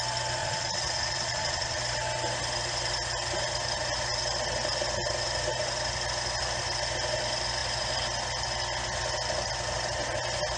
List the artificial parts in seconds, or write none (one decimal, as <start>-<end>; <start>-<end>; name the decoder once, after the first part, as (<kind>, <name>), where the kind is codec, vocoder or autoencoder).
0.4-1.8 (vocoder, Vocos)